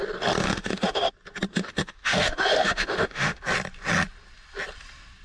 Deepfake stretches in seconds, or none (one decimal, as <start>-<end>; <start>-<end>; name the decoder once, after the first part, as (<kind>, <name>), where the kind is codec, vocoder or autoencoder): 0.4-1.1 (autoencoder, DAC-VAE); 1.5-3.4